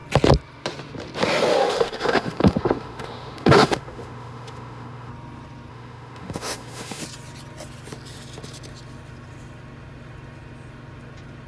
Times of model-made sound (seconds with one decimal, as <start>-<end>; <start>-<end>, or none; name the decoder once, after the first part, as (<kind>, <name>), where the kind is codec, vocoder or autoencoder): 1.5-5.1 (autoencoder, DAC-VAE); 5.7-7.0